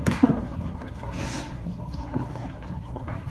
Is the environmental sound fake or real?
fake